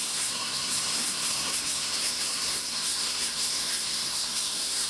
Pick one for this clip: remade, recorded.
remade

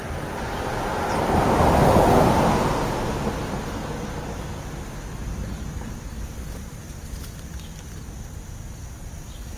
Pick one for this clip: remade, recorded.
recorded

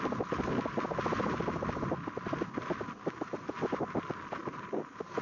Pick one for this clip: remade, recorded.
recorded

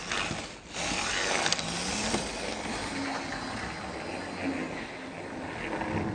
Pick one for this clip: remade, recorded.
recorded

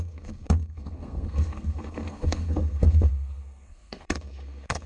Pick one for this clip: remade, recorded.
remade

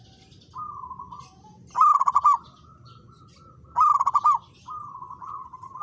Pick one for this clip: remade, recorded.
recorded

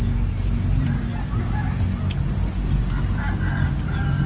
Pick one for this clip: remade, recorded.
recorded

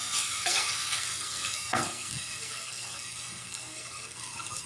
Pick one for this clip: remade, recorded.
remade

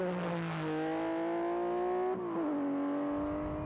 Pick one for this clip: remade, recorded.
recorded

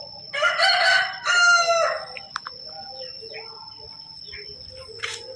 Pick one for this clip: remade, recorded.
recorded